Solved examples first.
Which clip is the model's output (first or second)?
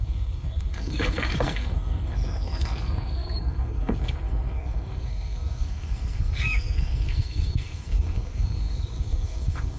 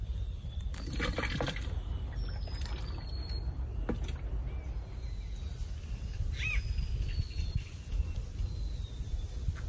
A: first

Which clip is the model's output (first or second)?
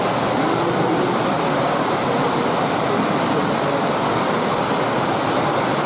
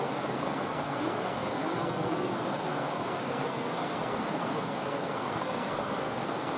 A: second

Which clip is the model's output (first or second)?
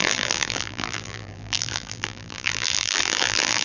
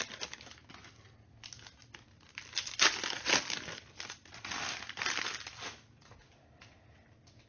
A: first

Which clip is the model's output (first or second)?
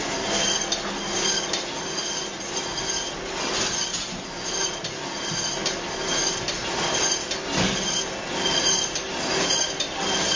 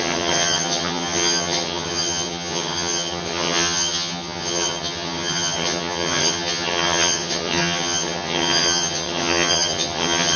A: second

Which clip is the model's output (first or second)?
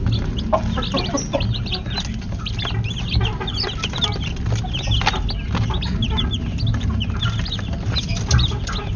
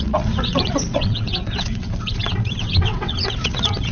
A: second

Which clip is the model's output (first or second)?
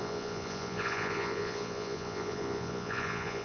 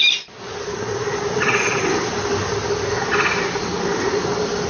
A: first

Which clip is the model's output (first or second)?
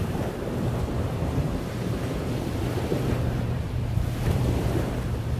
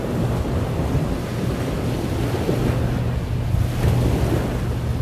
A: first